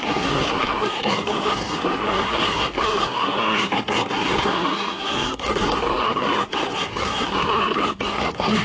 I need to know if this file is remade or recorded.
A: remade